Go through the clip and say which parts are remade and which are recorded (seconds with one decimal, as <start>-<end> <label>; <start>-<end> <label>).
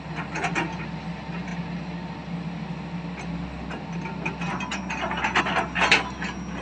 0.0-6.6 recorded